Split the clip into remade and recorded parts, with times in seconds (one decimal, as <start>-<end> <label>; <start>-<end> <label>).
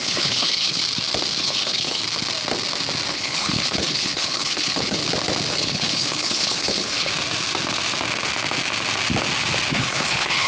0.0-0.8 remade; 0.8-1.4 recorded; 1.4-2.0 remade; 2.0-3.1 recorded; 3.1-5.0 remade; 5.0-5.5 recorded; 5.5-7.1 remade; 7.1-9.7 recorded; 9.7-10.5 remade